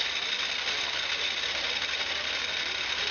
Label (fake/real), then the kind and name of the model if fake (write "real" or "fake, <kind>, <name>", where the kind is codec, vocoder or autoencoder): real